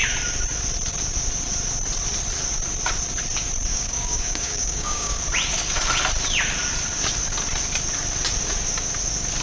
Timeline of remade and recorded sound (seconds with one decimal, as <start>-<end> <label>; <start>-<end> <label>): 0.0-3.7 recorded; 3.7-5.2 remade; 5.2-9.4 recorded